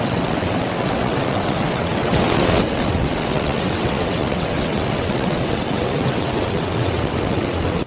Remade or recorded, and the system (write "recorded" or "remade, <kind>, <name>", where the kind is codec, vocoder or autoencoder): remade, vocoder, WaveNeXt